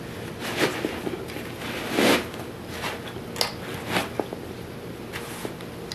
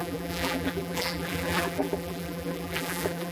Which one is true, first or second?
first